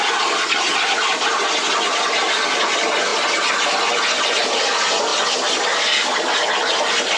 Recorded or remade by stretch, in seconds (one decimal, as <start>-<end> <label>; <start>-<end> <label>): 0.0-7.2 recorded